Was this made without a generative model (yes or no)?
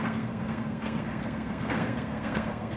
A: no